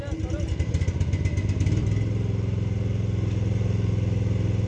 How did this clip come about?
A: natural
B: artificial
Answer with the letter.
A